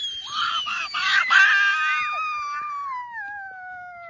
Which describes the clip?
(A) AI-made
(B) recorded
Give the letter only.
B